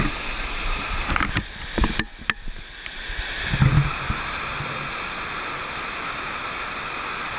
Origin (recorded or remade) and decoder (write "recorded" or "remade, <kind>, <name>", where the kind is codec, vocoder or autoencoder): recorded